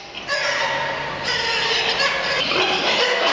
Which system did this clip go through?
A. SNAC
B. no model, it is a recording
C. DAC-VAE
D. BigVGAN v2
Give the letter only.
B